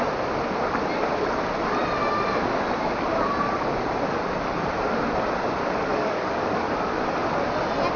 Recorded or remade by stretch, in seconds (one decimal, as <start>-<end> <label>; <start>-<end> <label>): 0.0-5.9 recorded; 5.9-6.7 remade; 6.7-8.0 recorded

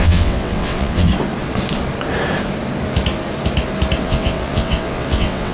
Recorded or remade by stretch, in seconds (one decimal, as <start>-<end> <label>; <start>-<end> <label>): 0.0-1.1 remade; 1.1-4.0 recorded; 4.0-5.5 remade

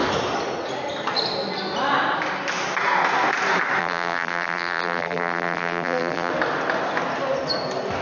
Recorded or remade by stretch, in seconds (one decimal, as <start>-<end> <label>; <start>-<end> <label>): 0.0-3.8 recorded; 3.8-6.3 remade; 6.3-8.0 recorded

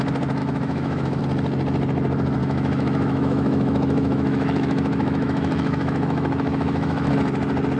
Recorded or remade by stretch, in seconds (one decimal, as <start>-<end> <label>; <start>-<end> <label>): 0.0-0.4 recorded; 0.4-1.2 remade; 1.2-2.4 recorded; 2.4-7.1 remade; 7.1-7.8 recorded

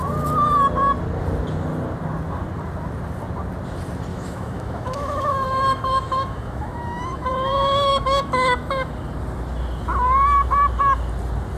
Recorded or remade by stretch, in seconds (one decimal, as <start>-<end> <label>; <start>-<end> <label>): 0.0-4.1 recorded; 4.1-8.9 remade; 8.9-11.6 recorded

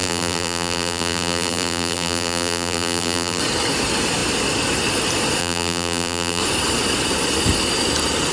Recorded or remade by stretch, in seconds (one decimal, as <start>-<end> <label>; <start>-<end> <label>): 0.0-3.4 remade; 3.4-5.4 recorded; 5.4-6.4 remade; 6.4-8.3 recorded

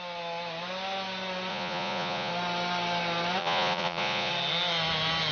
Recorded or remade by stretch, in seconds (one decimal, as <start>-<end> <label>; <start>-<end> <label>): 0.0-1.5 recorded; 1.5-2.3 remade; 2.3-3.4 recorded; 3.4-4.3 remade; 4.3-5.3 recorded